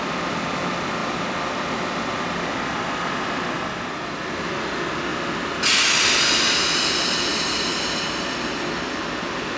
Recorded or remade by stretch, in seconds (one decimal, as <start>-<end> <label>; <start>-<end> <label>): 0.0-7.3 recorded; 7.3-7.9 remade; 7.9-9.6 recorded